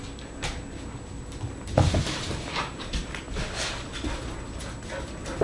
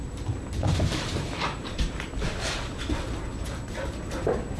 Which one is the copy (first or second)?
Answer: second